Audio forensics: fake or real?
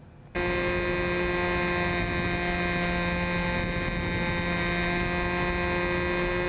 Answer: real